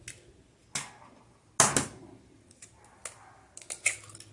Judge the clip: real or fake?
real